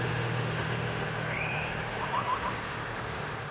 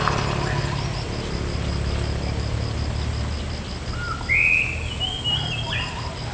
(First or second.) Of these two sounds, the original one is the second